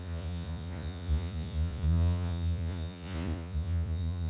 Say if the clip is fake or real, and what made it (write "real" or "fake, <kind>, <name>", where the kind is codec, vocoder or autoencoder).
fake, vocoder, Vocos